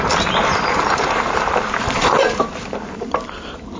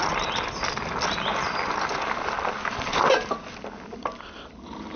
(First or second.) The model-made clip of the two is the first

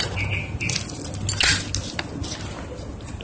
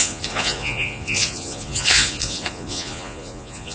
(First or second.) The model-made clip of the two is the second